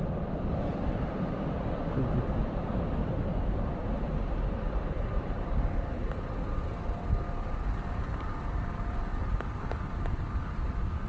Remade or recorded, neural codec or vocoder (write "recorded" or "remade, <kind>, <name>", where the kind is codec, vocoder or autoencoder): remade, vocoder, BigVGAN v2